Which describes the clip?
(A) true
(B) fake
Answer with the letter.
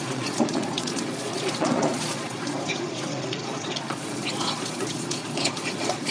B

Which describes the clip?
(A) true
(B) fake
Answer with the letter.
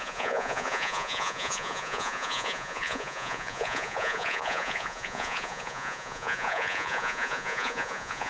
B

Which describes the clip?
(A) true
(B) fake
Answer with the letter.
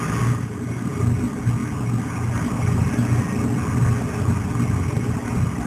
A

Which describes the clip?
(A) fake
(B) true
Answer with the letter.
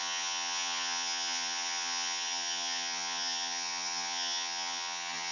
A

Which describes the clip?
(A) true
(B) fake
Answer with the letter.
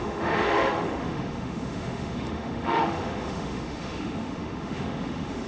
B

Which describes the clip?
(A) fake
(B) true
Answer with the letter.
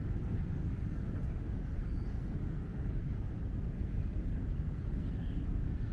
A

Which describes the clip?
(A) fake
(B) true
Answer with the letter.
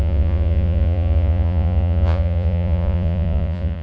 A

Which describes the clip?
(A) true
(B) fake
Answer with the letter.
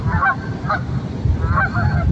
A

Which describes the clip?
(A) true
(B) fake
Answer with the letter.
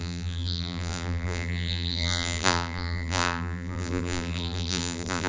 B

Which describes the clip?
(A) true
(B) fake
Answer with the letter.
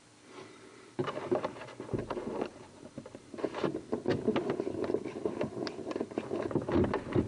A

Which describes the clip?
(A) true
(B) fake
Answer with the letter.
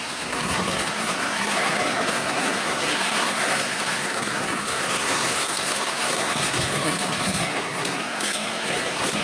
B